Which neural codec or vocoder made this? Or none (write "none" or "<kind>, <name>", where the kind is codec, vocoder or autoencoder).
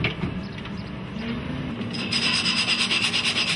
none